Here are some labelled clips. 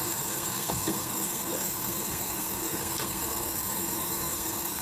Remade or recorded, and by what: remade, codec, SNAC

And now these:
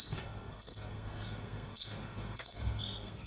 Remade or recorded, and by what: remade, codec, SNAC